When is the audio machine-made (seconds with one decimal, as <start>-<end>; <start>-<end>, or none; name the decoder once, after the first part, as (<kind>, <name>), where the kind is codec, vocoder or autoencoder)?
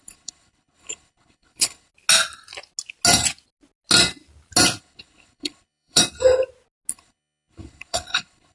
0.0-1.9 (codec, HILCodec); 4.8-6.0; 6.9-8.5